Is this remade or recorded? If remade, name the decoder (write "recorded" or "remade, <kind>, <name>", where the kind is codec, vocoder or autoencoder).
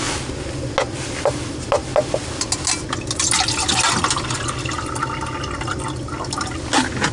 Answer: recorded